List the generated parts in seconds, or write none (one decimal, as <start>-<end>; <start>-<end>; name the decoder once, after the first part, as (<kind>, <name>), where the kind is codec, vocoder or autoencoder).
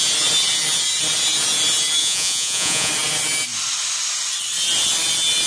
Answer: 2.0-2.9 (vocoder, Vocos)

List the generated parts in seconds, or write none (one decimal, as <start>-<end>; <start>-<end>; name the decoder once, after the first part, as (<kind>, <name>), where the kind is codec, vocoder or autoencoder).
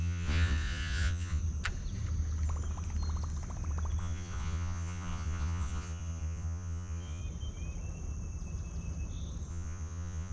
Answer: 0.0-1.4 (vocoder, Vocos); 4.0-7.2; 9.5-10.3